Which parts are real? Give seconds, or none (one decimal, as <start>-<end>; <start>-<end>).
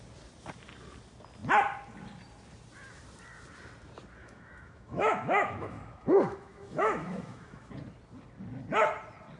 0.0-4.2; 7.7-9.4